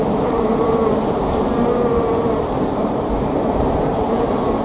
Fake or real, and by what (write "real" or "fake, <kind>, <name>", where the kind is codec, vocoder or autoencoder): fake, vocoder, BigVGAN v2